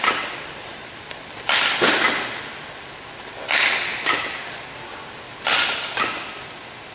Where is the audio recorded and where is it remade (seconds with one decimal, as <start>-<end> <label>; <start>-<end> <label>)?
0.0-3.9 recorded; 3.9-4.4 remade; 4.4-6.9 recorded